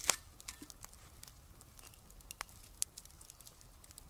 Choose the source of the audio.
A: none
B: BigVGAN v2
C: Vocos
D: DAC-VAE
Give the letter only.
A